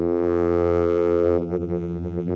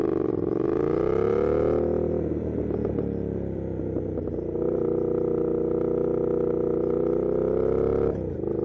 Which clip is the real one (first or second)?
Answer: second